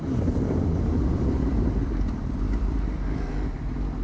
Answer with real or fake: fake